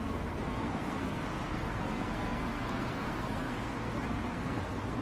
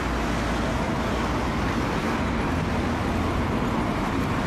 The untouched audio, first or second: second